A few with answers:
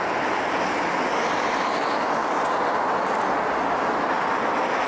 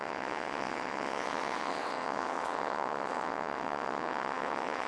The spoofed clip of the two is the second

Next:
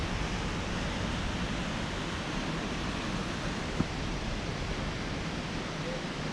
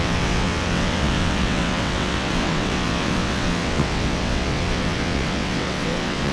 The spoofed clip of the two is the second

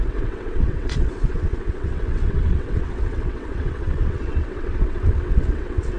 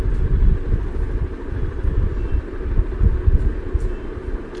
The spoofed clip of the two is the first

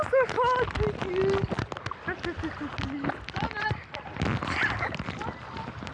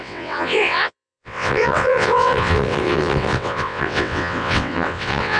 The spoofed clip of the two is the second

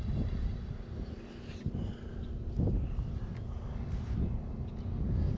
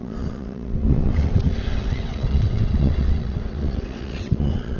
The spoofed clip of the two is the second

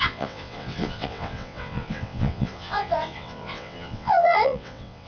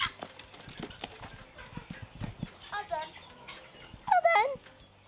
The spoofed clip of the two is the first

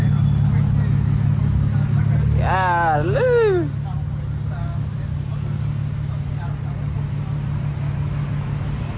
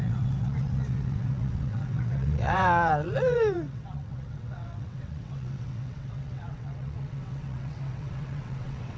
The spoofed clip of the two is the second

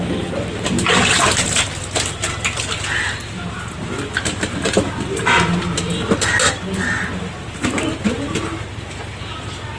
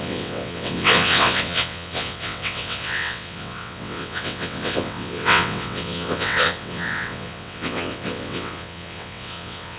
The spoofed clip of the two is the second